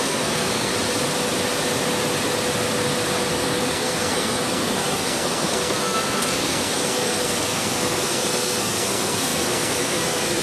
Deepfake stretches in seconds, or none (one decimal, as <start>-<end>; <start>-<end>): 0.0-0.7; 3.3-10.4